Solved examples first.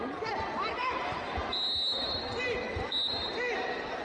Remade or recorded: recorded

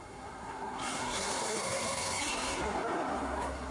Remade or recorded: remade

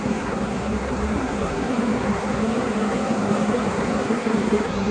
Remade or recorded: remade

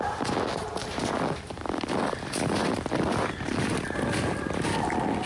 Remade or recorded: recorded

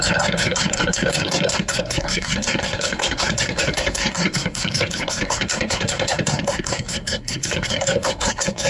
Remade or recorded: remade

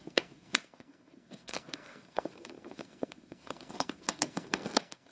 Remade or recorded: remade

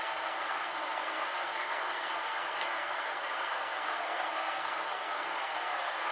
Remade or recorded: remade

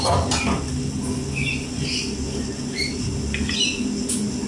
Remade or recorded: recorded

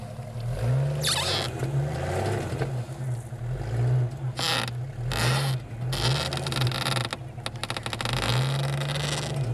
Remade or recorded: recorded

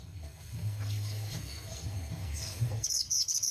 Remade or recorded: remade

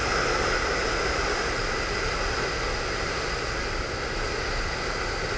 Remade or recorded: recorded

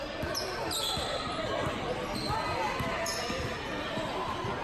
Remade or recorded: recorded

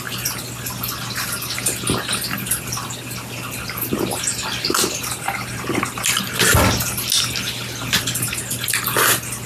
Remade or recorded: recorded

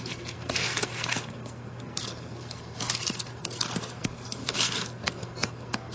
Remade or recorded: remade